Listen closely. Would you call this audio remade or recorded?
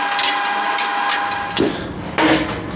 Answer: recorded